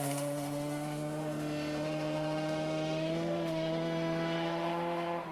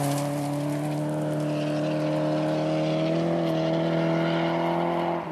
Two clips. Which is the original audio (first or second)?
second